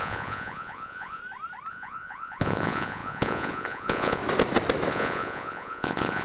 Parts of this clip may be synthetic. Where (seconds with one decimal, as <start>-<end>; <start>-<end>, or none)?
0.0-1.2; 1.7-4.2; 4.9-6.2